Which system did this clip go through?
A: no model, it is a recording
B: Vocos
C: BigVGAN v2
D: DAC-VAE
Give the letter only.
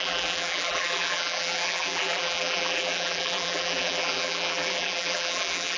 C